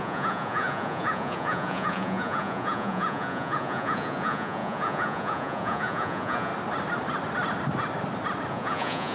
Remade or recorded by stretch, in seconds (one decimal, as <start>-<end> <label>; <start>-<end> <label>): 0.0-6.5 remade; 6.5-8.5 recorded; 8.5-9.1 remade